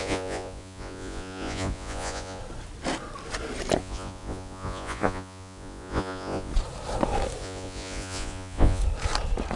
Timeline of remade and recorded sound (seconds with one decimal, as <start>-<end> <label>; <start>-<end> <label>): 0.0-2.4 remade; 2.4-3.8 recorded; 3.8-6.5 remade; 6.5-7.4 recorded; 7.4-8.8 remade; 8.8-9.6 recorded